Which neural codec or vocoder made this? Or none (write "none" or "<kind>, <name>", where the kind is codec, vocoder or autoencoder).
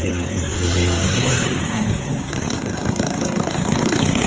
codec, SNAC